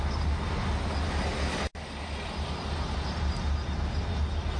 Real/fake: real